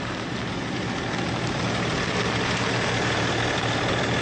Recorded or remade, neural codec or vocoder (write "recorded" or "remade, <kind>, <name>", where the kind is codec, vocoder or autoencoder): recorded